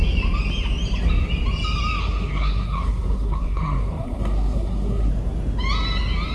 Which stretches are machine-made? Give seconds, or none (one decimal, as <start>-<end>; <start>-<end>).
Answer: 2.0-5.1